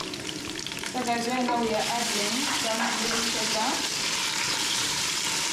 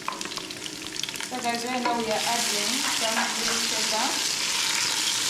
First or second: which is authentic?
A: second